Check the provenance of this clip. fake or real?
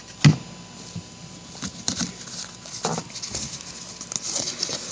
real